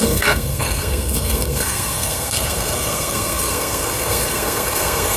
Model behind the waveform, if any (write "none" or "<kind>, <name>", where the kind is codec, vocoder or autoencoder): codec, SNAC